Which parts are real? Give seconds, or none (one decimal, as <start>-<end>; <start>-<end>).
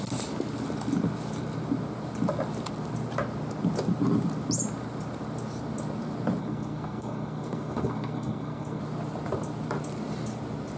0.0-6.4; 8.8-10.8